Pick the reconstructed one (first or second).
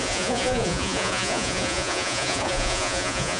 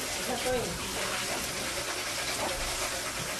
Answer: first